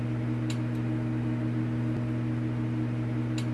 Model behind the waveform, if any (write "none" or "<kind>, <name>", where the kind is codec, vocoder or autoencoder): none